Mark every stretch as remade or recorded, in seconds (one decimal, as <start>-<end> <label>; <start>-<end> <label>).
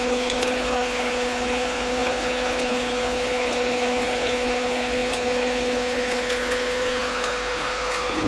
0.0-8.3 remade